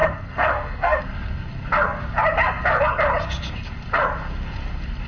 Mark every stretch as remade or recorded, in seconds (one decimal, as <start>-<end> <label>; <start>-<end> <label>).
0.0-1.0 remade; 1.0-5.1 recorded